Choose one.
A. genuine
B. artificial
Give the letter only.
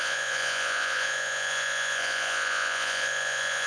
B